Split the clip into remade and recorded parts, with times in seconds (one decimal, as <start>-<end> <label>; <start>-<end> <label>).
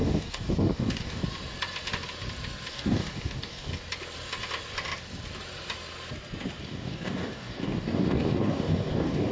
0.0-1.2 remade; 1.2-2.7 recorded; 2.7-3.7 remade; 3.7-6.6 recorded; 6.6-9.3 remade